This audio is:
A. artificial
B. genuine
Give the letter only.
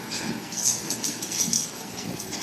A